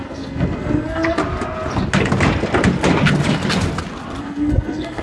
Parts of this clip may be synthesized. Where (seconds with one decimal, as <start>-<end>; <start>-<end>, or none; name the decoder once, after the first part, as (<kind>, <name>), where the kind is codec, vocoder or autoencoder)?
0.0-1.2 (codec, SNAC); 4.2-5.0

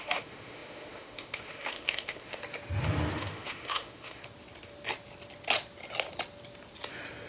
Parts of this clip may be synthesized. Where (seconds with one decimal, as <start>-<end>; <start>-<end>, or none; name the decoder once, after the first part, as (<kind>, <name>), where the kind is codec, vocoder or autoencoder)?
0.0-2.4 (autoencoder, DAC-VAE); 3.1-4.2

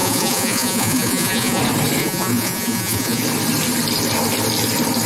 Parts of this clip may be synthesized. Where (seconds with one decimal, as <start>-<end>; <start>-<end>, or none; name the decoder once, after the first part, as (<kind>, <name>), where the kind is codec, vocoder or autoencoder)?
0.0-1.6 (vocoder, Vocos); 2.0-3.2

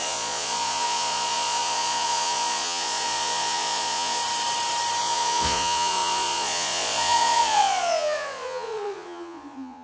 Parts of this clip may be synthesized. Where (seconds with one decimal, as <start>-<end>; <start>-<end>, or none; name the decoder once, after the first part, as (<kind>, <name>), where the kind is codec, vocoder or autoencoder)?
0.0-4.2 (vocoder, Vocos); 5.0-9.8

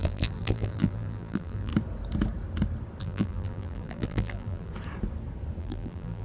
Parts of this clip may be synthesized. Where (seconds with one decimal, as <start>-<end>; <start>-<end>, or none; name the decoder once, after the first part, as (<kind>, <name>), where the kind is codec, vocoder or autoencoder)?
0.0-1.7 (vocoder, BigVGAN v2); 3.0-4.7; 5.6-6.2

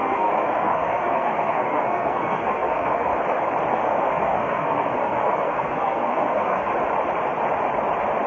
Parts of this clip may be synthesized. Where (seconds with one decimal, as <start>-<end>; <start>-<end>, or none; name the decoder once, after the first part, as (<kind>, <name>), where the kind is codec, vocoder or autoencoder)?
0.0-3.1 (codec, SNAC); 3.7-6.7

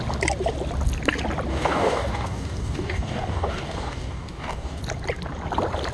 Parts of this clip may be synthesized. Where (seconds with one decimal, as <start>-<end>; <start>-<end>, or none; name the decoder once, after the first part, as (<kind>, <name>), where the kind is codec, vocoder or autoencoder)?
1.5-4.8 (codec, DAC)

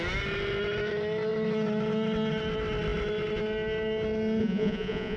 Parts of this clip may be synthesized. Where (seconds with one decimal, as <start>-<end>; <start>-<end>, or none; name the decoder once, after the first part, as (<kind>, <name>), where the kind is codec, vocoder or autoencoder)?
4.4-5.2 (vocoder, Vocos)